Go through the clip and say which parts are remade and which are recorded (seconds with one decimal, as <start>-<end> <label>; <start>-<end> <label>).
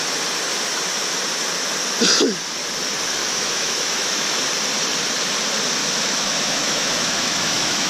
0.0-3.2 recorded; 3.2-4.4 remade; 4.4-5.8 recorded; 5.8-7.9 remade